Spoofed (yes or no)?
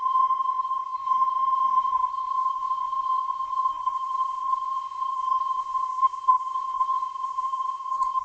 yes